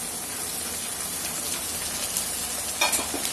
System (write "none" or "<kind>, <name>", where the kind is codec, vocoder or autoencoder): none